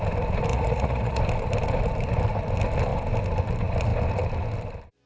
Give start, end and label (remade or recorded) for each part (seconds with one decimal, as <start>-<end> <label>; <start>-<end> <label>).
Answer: 0.0-0.5 recorded; 0.5-1.2 remade; 1.2-5.1 recorded